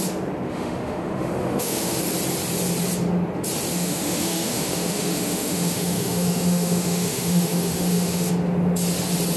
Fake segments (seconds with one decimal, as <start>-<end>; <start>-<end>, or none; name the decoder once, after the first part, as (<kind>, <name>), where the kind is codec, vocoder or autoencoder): 0.5-2.0 (autoencoder, DAC-VAE); 3.7-8.3